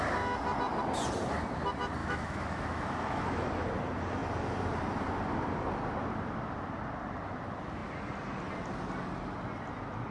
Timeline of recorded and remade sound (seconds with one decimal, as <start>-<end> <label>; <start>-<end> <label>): 0.0-2.0 recorded; 2.0-3.5 remade; 3.5-10.1 recorded